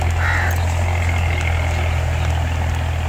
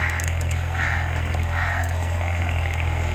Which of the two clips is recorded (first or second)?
first